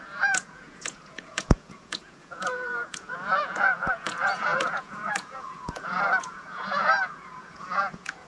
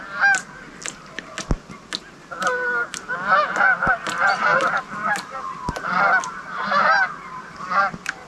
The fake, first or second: first